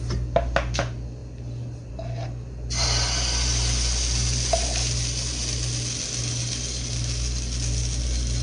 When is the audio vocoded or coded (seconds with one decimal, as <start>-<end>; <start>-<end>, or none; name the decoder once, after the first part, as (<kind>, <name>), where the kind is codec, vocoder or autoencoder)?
none